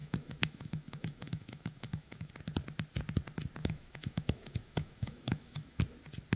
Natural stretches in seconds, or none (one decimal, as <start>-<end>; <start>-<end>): 2.3-3.6; 5.8-6.4